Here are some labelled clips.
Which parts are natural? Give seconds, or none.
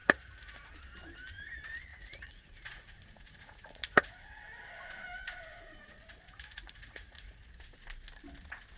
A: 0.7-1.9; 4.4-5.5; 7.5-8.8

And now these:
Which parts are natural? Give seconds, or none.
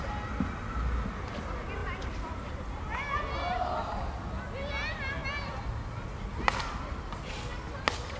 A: 0.0-1.8; 2.6-8.2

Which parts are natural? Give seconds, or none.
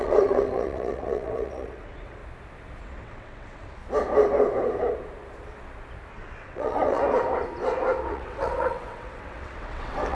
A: 2.2-2.8; 3.8-6.1; 7.0-8.1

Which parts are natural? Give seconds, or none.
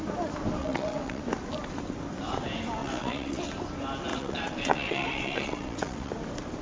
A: 0.0-0.6; 1.2-2.8; 3.5-4.1; 6.1-6.6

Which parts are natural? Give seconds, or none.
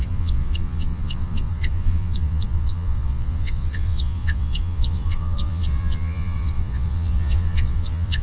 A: none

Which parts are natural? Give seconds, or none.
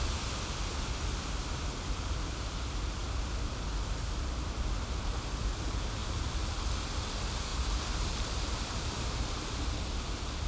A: 0.0-7.5; 9.8-10.5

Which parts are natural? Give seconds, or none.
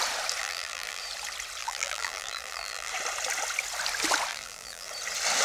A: 0.0-0.4; 1.0-1.6; 2.9-4.3; 4.9-5.4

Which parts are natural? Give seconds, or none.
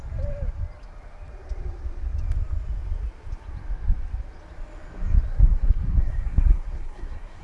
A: 0.0-5.3